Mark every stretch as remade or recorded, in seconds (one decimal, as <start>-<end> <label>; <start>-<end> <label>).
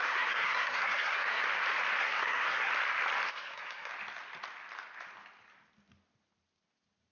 0.0-1.4 remade; 1.4-2.0 recorded; 2.0-2.7 remade; 2.7-3.3 recorded; 3.3-3.9 remade; 3.9-7.1 recorded